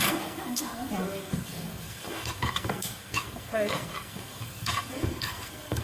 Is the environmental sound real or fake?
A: fake